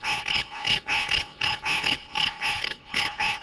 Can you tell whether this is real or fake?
fake